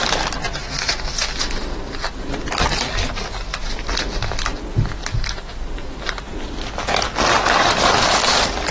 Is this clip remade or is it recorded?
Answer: recorded